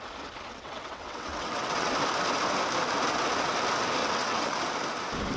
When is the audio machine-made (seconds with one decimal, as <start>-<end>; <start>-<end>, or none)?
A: 0.5-1.9; 4.0-4.6